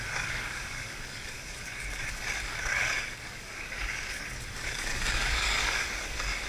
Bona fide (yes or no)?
no